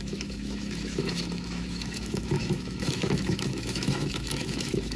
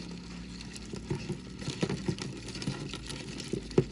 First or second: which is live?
second